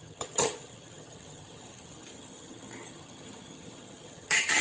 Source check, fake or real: fake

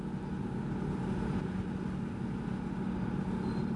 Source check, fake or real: real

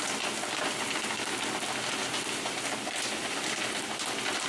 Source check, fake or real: real